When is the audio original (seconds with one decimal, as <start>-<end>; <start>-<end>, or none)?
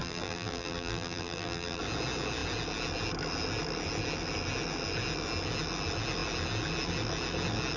1.8-7.8